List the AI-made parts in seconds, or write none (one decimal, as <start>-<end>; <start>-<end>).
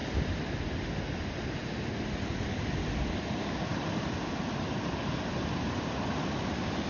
0.0-0.6; 3.7-5.0